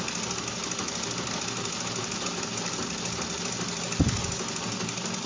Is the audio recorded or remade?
recorded